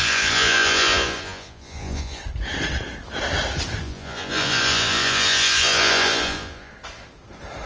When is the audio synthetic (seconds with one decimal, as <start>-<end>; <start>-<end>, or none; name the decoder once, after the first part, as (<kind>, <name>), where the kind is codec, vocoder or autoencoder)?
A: 0.0-2.2 (vocoder, Vocos); 3.8-6.7